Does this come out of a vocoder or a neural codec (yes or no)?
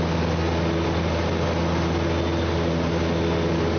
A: no